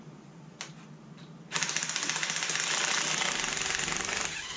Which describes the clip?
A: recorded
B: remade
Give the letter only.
A